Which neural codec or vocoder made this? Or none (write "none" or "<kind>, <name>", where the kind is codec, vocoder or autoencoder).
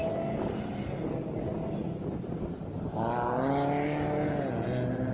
none